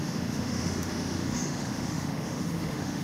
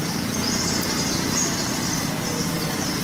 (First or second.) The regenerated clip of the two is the first